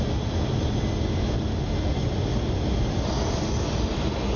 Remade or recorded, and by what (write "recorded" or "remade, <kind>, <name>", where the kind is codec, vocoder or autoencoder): recorded